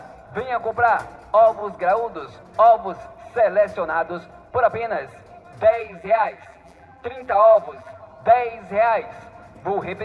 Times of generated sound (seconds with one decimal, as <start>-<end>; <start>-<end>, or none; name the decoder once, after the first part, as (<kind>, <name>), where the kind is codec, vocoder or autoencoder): 5.7-8.0 (vocoder, BigVGAN v2)